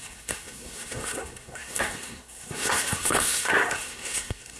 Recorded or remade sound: remade